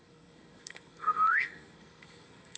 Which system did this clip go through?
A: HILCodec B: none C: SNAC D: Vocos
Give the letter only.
C